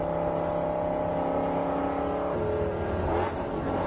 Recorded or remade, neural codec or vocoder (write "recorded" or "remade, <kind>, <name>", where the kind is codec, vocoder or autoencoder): recorded